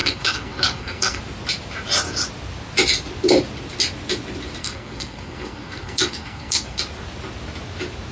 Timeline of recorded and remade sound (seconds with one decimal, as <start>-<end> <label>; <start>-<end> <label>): 0.0-1.2 remade; 1.2-4.6 recorded; 4.6-6.8 remade; 6.8-8.1 recorded

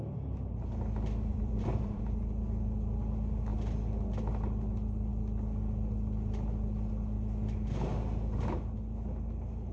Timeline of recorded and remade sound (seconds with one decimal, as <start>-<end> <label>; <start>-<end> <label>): 0.0-1.3 recorded; 1.3-2.2 remade; 2.2-9.7 recorded

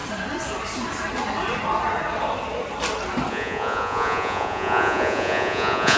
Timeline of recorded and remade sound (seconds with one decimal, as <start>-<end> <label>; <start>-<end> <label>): 0.0-3.3 recorded; 3.3-6.0 remade

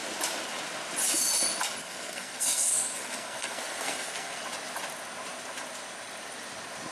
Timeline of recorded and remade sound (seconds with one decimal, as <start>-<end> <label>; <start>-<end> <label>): 0.0-1.8 recorded; 1.8-4.4 remade; 4.4-6.9 recorded

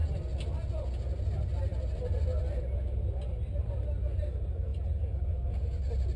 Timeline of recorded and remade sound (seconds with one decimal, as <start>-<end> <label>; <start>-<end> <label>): 0.0-6.2 recorded